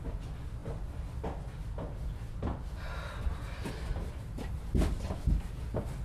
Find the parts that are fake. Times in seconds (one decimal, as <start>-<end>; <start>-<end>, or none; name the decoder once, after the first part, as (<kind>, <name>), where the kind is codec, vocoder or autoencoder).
none